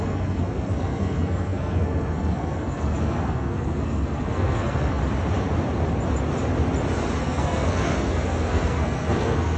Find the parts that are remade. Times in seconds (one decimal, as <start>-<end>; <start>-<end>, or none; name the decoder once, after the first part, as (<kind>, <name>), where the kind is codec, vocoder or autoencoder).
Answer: 0.0-5.0 (codec, SNAC); 7.2-9.6